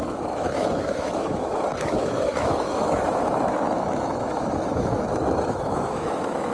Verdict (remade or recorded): remade